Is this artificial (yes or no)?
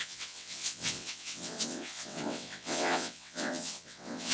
yes